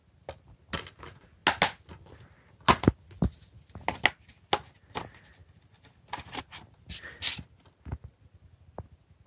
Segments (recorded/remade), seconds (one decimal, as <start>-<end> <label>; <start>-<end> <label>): 0.0-9.3 recorded